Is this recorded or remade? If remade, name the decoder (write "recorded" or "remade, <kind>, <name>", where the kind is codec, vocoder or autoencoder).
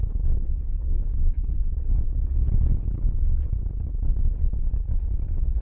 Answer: remade, codec, HILCodec